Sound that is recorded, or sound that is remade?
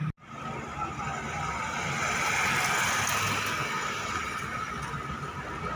recorded